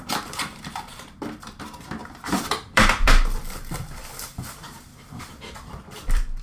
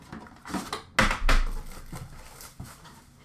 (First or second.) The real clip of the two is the second